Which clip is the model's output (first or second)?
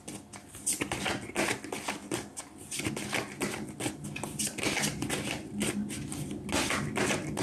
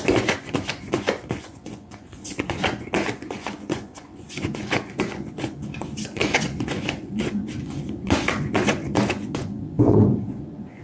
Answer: second